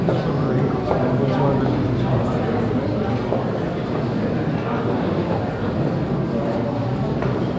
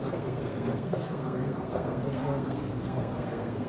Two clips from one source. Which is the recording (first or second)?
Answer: first